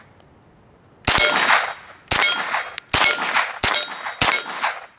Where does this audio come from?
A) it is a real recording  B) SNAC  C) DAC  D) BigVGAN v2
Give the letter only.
A